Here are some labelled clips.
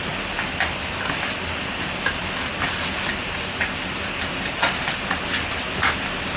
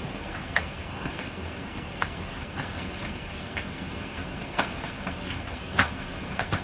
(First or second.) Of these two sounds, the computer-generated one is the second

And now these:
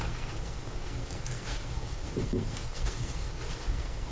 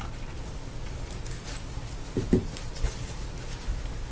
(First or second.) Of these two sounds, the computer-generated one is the first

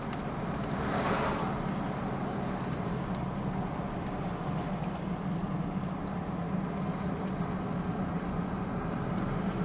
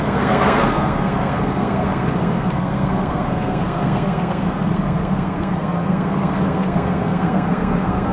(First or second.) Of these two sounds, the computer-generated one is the second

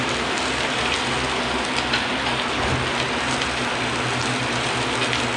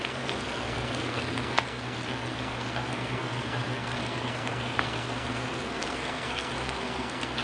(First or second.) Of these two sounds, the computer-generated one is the second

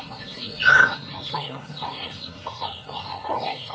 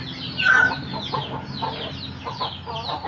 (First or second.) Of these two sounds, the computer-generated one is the first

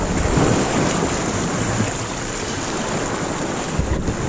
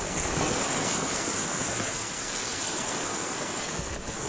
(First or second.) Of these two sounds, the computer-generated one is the second